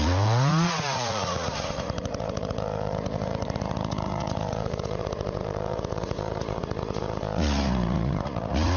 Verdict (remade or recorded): remade